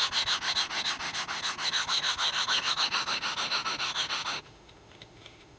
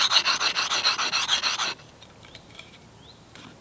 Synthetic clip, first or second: first